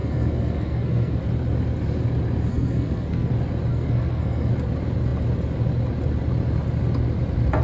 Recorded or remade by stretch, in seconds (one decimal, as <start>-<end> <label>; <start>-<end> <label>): 0.0-1.2 remade; 1.2-2.5 recorded; 2.5-3.3 remade; 3.3-3.7 recorded; 3.7-4.5 remade; 4.5-7.6 recorded